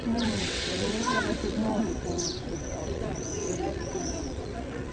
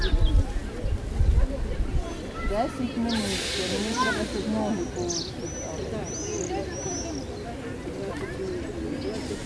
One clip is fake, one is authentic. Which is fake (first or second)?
first